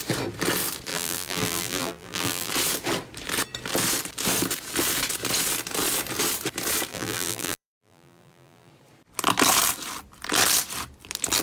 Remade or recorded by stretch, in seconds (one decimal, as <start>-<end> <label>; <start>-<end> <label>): 0.0-0.9 recorded; 0.9-2.5 remade; 2.5-6.9 recorded; 6.9-8.7 remade; 8.7-11.4 recorded